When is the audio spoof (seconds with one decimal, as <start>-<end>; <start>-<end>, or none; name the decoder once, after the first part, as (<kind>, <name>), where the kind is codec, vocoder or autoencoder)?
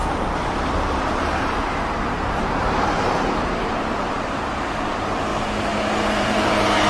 0.0-5.3 (vocoder, BigVGAN v2); 6.0-6.9